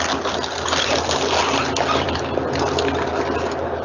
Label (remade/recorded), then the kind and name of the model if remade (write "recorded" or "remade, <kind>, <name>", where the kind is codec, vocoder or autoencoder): recorded